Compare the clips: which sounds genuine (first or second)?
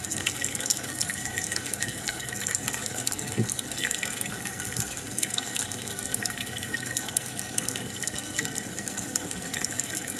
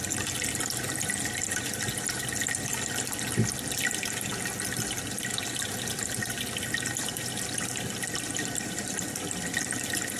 second